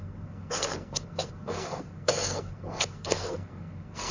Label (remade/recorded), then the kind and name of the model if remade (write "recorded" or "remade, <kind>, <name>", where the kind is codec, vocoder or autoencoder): remade, codec, SNAC